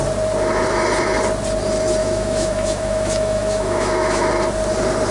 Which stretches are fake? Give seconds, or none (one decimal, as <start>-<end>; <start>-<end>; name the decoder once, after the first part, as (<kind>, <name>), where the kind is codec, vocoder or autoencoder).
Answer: 2.0-4.3 (autoencoder, DAC-VAE)